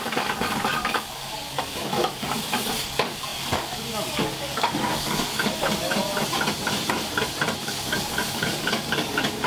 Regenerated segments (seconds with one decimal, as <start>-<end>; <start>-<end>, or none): 0.0-6.0; 7.6-9.5